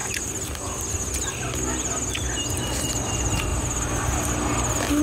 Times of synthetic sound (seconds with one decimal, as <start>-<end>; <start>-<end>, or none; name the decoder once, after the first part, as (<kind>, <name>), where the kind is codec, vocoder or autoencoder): none